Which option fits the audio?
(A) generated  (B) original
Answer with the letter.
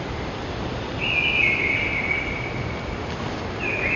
B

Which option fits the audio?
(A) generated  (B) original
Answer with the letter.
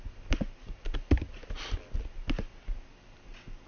B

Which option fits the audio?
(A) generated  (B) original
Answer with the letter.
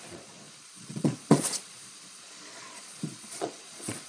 A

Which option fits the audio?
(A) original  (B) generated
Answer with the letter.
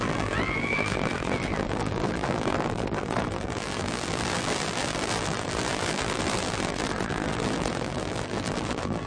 B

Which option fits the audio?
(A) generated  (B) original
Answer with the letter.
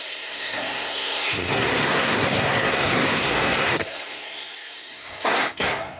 A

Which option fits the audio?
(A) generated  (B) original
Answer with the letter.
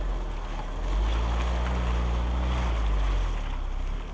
B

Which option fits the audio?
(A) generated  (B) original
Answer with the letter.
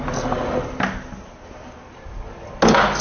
B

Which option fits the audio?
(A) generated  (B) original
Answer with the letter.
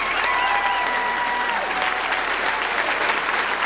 B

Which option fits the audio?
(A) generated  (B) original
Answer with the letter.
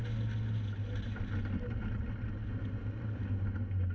B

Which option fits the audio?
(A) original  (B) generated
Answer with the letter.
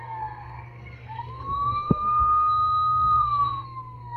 B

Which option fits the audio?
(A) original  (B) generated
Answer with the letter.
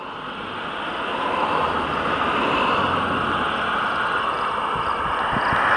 A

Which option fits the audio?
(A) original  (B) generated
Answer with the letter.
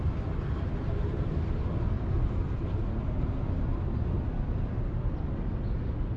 A